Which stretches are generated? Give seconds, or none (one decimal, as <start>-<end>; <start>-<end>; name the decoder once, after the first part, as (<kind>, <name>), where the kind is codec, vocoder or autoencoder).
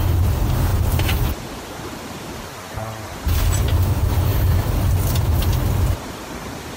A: 0.7-2.6 (vocoder, BigVGAN v2); 4.3-5.0